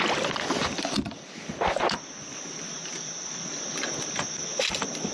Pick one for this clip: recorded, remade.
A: recorded